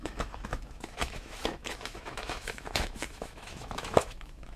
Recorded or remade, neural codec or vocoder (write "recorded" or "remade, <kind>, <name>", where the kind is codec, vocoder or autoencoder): remade, autoencoder, DAC-VAE